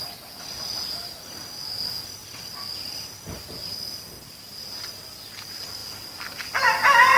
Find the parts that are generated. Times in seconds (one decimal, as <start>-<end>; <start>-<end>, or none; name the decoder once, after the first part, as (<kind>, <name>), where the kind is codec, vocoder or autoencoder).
none